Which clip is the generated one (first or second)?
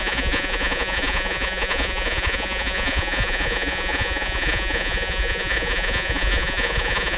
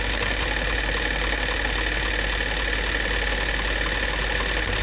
first